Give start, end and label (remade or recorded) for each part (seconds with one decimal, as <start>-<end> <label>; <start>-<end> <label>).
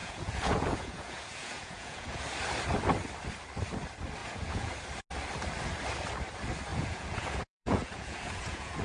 0.0-2.2 remade; 2.2-4.2 recorded; 4.2-4.7 remade; 4.7-6.7 recorded; 6.7-8.8 remade